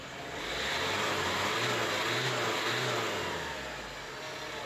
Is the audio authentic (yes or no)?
yes